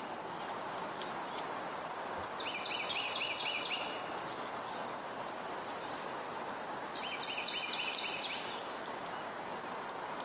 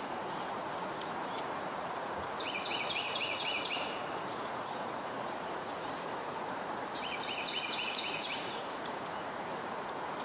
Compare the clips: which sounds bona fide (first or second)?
first